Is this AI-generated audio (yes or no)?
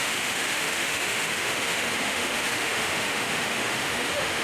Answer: yes